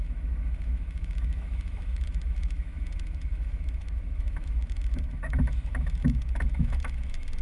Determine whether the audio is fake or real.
fake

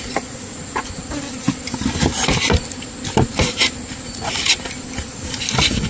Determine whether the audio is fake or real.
real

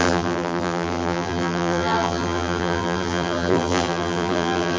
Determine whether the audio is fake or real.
fake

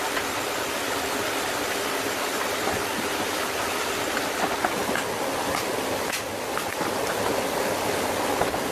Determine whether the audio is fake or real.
real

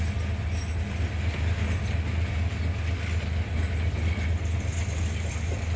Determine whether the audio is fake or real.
real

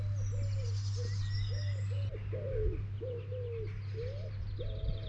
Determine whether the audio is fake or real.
real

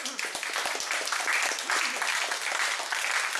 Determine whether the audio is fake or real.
real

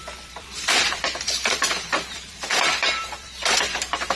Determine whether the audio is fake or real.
fake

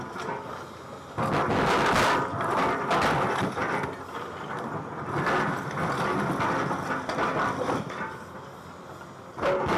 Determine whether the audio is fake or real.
real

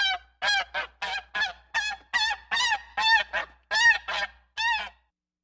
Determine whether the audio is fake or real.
real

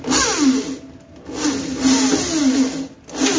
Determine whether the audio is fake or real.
real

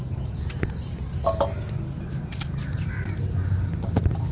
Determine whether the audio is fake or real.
real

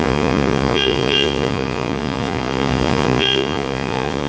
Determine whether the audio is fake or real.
fake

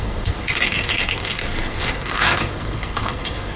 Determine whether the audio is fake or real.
fake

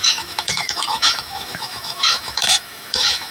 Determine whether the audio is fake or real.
fake